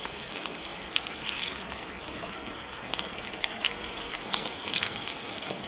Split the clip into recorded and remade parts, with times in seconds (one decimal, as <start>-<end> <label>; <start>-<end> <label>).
0.0-5.7 remade